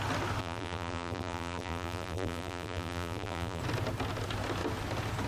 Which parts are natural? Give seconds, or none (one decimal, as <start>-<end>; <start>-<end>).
0.0-0.4; 3.6-5.3